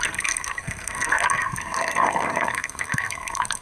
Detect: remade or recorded remade